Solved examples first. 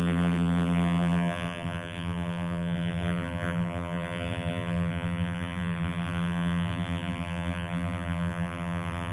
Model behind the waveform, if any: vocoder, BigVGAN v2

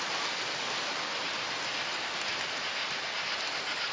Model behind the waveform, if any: none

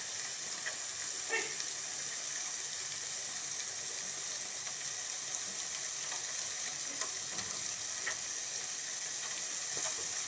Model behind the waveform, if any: none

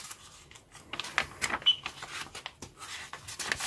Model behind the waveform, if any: none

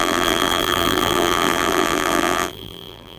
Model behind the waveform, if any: vocoder, BigVGAN v2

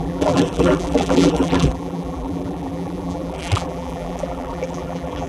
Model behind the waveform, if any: vocoder, BigVGAN v2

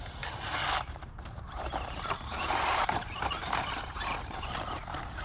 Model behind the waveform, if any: vocoder, BigVGAN v2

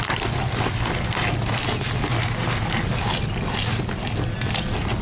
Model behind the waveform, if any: none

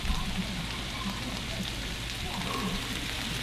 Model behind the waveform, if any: vocoder, BigVGAN v2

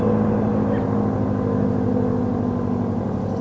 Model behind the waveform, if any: none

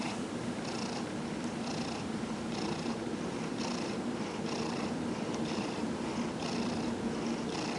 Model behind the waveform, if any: vocoder, BigVGAN v2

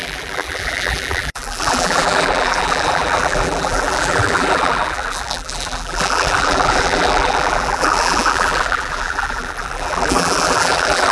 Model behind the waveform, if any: vocoder, BigVGAN v2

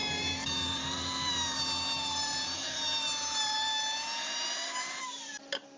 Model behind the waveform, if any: vocoder, BigVGAN v2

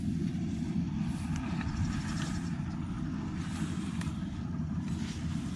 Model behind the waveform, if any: none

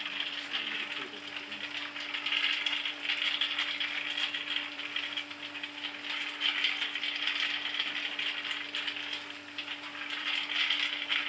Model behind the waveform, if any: vocoder, BigVGAN v2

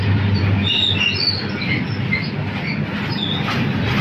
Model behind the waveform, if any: none